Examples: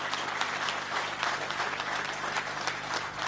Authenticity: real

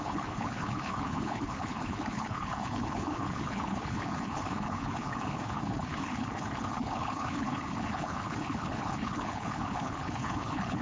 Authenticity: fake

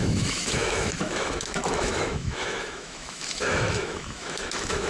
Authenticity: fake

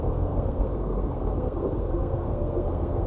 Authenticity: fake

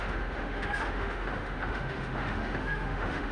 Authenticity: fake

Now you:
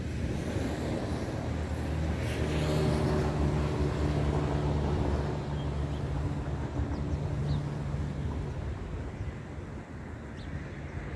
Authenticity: real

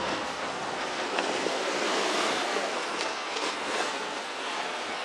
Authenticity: fake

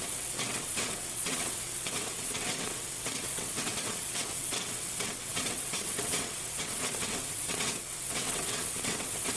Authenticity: fake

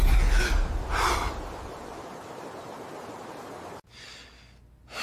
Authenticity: real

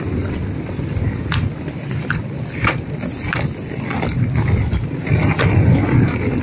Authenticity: real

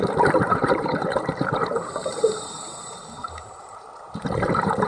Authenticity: fake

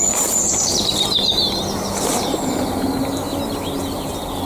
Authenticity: real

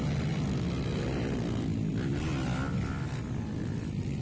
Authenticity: real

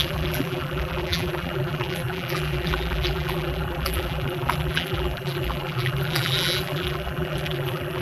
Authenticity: fake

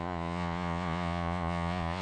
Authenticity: fake